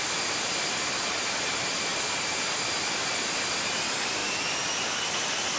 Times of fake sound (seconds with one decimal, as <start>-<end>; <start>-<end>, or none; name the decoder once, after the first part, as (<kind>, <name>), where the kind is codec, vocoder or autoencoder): none